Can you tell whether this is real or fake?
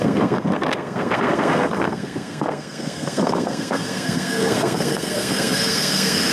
fake